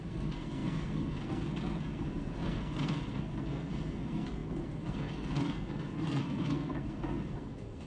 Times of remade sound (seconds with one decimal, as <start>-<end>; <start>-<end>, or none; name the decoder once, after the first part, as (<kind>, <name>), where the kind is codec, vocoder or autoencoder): 0.0-7.9 (codec, SNAC)

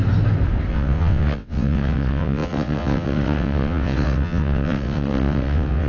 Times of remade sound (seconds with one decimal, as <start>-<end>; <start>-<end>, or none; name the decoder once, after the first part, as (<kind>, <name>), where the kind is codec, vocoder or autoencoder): 0.7-5.9 (vocoder, WaveNeXt)

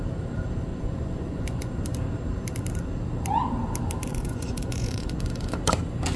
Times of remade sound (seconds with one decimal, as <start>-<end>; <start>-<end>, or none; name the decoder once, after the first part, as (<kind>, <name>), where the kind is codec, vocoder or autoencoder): 0.7-1.7 (vocoder, Vocos); 4.1-5.2

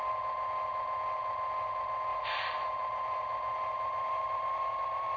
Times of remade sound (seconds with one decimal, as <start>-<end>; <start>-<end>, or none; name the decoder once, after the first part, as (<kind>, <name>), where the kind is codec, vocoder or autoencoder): 2.1-5.2 (vocoder, BigVGAN v2)